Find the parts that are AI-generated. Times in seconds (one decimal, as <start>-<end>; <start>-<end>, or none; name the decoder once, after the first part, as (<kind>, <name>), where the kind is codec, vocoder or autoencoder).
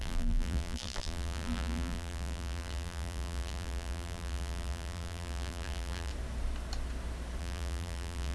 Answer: 0.0-6.1 (vocoder, BigVGAN v2); 7.4-8.3